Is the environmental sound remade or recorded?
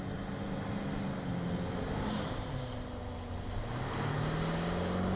recorded